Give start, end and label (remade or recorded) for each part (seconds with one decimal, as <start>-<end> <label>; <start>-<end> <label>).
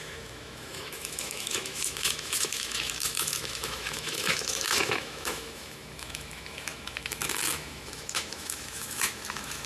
0.0-9.7 remade